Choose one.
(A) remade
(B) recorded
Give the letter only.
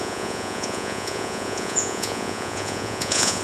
A